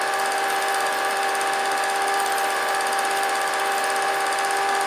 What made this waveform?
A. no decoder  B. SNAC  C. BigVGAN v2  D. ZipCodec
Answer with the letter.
A